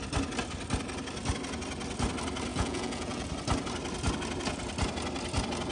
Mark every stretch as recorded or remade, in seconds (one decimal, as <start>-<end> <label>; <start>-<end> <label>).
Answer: 0.0-2.5 recorded; 2.5-3.3 remade; 3.3-5.7 recorded